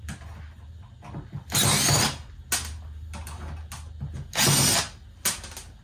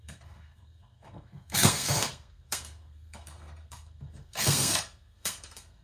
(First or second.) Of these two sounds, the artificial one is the second